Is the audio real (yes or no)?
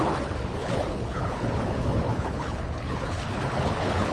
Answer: no